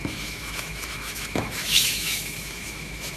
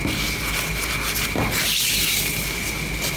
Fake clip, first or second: first